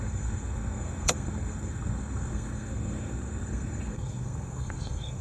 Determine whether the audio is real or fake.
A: fake